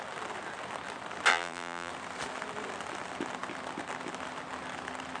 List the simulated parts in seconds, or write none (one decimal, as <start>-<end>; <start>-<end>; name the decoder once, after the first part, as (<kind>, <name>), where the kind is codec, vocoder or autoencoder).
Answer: 1.3-1.9 (vocoder, BigVGAN v2)